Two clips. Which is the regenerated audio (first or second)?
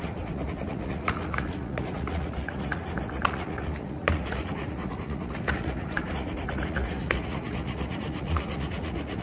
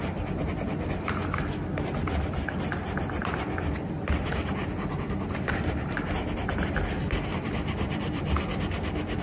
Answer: first